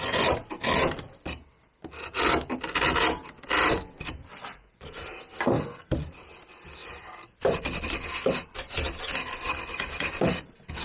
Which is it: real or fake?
real